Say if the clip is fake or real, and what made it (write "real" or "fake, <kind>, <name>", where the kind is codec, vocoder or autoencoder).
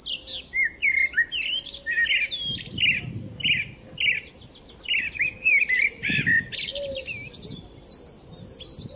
real